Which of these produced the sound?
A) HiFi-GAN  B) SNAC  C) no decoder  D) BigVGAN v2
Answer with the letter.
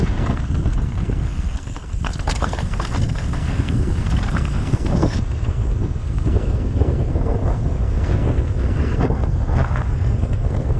B